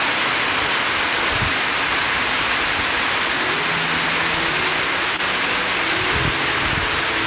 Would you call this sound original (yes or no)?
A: yes